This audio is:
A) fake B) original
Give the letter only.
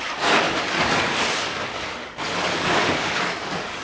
A